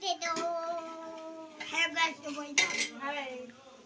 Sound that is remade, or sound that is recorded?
recorded